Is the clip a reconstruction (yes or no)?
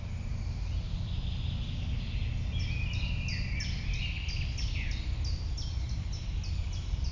no